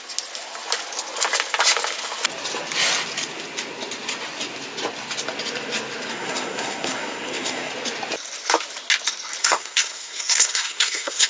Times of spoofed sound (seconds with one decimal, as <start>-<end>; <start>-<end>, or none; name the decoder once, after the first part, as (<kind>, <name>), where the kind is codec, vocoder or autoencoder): 6.1-7.7 (codec, SNAC); 9.4-11.3